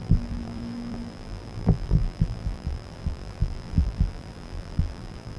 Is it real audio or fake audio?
fake